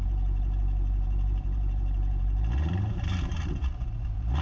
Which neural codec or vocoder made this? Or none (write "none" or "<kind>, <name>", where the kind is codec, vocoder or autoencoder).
vocoder, BigVGAN v2